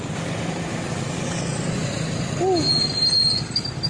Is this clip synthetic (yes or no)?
no